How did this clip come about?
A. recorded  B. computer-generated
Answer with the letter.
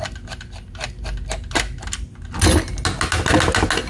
A